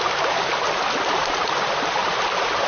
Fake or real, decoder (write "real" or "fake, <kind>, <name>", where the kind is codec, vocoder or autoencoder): real